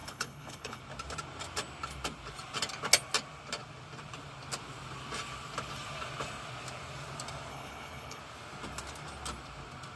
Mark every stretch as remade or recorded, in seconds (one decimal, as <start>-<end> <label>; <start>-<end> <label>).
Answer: 0.0-0.8 remade; 0.8-7.5 recorded; 7.5-8.2 remade; 8.2-10.0 recorded